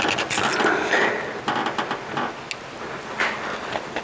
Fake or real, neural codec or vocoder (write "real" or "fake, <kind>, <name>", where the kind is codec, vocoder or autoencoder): real